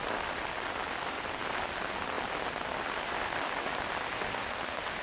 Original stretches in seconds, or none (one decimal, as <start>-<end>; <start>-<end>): 0.0-5.0